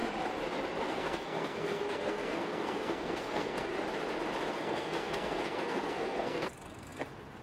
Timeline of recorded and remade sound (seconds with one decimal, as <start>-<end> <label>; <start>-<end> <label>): 0.0-0.8 recorded; 0.8-3.7 remade; 3.7-4.5 recorded; 4.5-7.4 remade